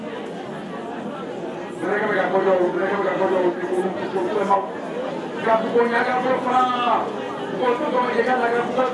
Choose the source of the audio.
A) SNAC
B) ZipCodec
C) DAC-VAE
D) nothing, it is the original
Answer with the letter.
D